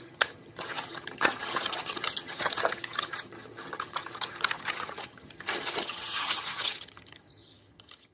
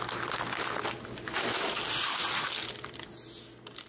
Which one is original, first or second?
second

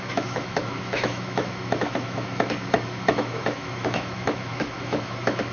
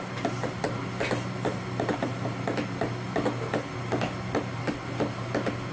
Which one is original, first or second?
second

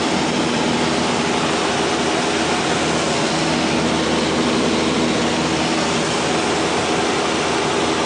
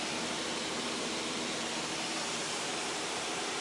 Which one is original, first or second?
first